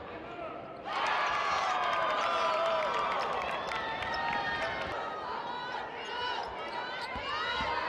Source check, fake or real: real